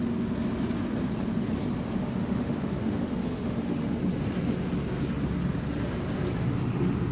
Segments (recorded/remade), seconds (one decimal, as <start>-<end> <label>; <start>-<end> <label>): 0.0-2.0 recorded; 2.0-4.0 remade; 4.0-7.1 recorded